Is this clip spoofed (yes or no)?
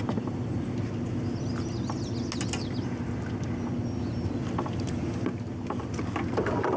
no